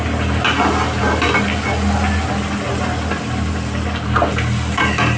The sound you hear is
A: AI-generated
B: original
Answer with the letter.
B